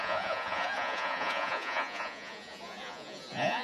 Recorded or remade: remade